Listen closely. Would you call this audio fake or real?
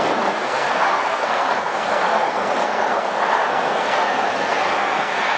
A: fake